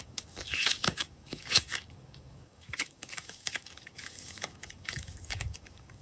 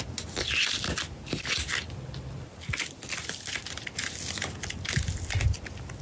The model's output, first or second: first